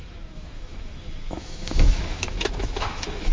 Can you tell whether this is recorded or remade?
remade